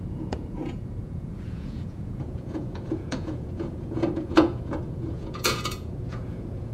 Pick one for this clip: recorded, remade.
remade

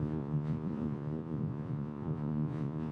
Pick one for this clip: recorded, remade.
remade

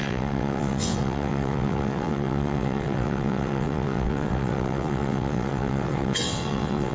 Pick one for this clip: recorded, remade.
remade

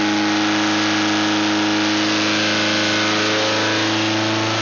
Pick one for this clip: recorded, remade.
recorded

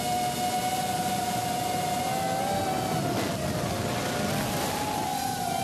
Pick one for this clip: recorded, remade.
recorded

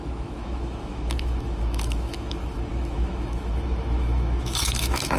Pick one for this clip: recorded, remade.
remade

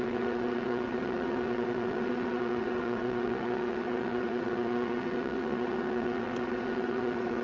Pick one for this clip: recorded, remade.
remade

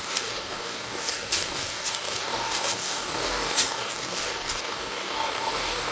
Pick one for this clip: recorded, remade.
remade